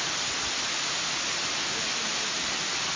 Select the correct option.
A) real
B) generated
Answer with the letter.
A